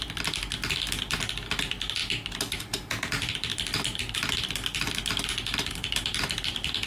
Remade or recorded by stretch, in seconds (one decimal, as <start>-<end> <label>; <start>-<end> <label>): 0.0-2.0 remade; 2.0-3.1 recorded; 3.1-3.5 remade; 3.5-5.7 recorded; 5.7-6.9 remade